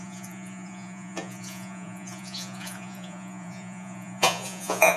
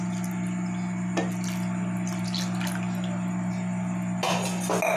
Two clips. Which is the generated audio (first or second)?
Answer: first